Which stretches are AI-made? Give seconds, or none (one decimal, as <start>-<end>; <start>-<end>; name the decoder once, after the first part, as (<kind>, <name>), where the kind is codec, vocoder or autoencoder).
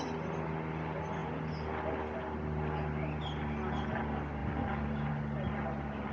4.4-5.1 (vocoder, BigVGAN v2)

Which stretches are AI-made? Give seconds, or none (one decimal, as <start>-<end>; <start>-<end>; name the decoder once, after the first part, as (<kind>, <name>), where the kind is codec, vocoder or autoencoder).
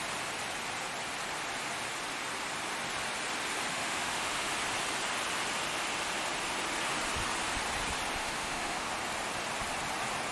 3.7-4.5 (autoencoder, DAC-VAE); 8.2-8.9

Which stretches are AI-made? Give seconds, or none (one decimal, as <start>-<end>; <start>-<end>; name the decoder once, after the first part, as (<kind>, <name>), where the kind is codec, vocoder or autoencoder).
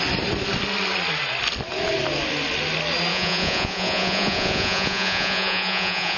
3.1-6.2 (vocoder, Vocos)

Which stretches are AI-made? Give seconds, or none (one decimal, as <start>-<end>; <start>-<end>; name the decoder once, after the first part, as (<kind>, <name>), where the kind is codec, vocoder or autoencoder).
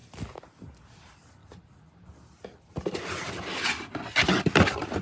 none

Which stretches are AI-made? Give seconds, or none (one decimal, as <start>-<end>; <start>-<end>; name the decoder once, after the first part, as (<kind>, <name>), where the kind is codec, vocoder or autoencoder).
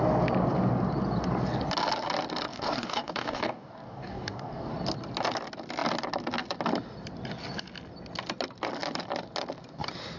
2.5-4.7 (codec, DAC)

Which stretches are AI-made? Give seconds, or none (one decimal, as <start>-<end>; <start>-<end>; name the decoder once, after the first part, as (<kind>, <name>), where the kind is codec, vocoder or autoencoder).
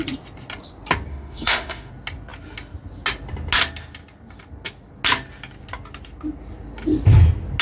1.1-1.9 (autoencoder, DAC-VAE)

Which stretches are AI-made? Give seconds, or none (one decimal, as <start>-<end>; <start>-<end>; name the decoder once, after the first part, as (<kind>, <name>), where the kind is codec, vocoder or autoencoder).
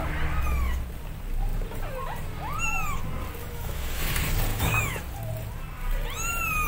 3.4-4.1 (autoencoder, DAC-VAE); 4.5-5.0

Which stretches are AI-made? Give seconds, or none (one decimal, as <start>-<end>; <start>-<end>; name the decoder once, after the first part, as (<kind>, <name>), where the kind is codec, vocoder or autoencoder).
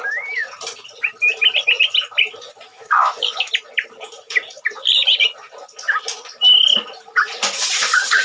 2.7-3.5 (autoencoder, DAC-VAE)